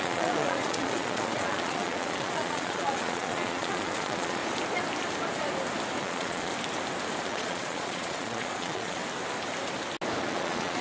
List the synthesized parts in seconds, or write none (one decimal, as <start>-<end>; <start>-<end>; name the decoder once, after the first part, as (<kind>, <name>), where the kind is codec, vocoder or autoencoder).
0.0-4.4 (vocoder, Vocos); 6.0-6.5; 7.2-9.0; 10.2-10.8